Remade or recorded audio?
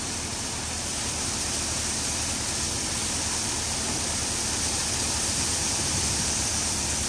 recorded